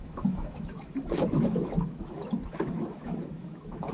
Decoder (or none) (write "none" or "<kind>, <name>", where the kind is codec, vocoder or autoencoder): autoencoder, DAC-VAE